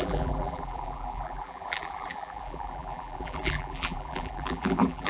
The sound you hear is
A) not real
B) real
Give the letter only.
A